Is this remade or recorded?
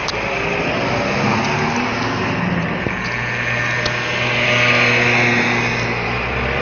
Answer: recorded